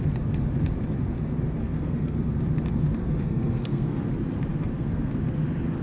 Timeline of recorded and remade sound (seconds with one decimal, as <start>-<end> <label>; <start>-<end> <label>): 0.0-1.6 recorded; 1.6-2.4 remade; 2.4-3.0 recorded; 3.0-4.1 remade; 4.1-4.5 recorded; 4.5-5.1 remade; 5.1-5.8 recorded

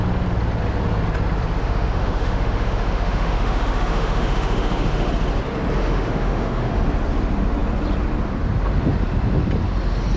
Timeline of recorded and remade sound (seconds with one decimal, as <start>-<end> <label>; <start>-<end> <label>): 0.0-1.6 recorded; 1.6-5.1 remade; 5.1-5.8 recorded; 5.8-6.8 remade; 6.8-10.2 recorded

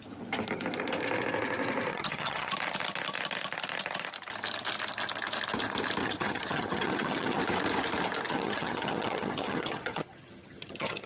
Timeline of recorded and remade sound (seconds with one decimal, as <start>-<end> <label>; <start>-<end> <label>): 0.0-1.9 recorded; 1.9-2.5 remade; 2.5-6.0 recorded; 6.0-7.4 remade; 7.4-8.3 recorded; 8.3-11.1 remade